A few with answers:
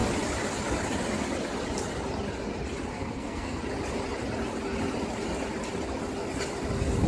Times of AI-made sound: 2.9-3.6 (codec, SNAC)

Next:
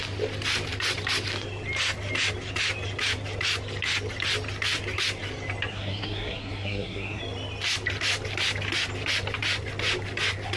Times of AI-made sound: 5.7-7.2 (codec, SNAC)

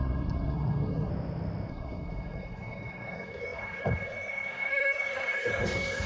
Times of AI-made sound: 0.0-1.1 (codec, SNAC); 1.7-6.1

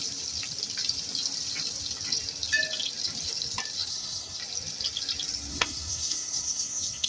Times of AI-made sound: 3.9-4.4 (codec, SNAC); 5.5-7.1